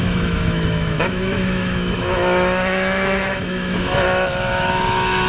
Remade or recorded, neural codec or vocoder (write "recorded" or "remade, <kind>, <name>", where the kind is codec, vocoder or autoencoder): remade, autoencoder, DAC-VAE